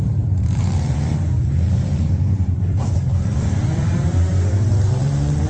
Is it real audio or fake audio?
fake